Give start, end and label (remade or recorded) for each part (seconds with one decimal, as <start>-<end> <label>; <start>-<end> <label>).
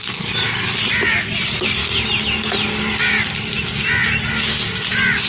0.0-5.3 recorded